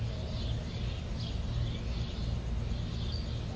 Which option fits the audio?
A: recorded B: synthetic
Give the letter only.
A